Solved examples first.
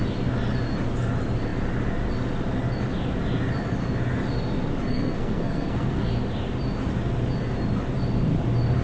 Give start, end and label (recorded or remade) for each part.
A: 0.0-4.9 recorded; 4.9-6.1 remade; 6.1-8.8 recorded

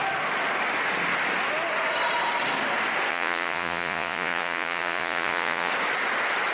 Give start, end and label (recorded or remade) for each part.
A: 0.0-3.1 recorded; 3.1-5.7 remade; 5.7-6.5 recorded

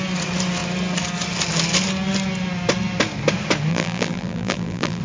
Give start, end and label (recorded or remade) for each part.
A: 0.0-3.7 recorded; 3.7-5.0 remade

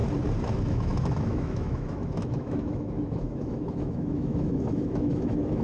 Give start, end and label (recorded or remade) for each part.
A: 0.0-0.5 recorded; 0.5-5.6 remade

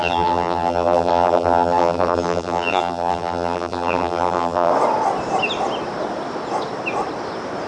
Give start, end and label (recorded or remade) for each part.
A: 0.0-4.7 remade; 4.7-7.7 recorded

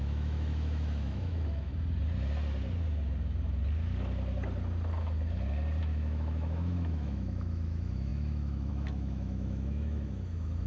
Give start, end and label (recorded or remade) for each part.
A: 0.0-1.7 remade; 1.7-5.8 recorded; 5.8-10.7 remade

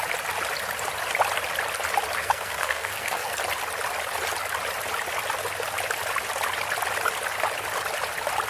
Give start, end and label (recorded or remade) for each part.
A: 0.0-2.2 recorded; 2.2-3.4 remade; 3.4-8.5 recorded

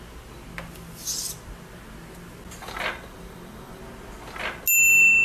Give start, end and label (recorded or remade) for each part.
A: 0.0-2.6 recorded; 2.6-3.8 remade; 3.8-5.2 recorded